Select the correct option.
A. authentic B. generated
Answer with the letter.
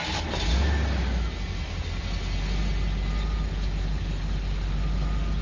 A